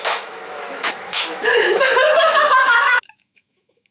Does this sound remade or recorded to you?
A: remade